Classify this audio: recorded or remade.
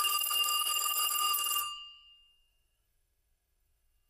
remade